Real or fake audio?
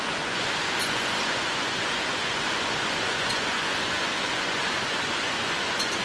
fake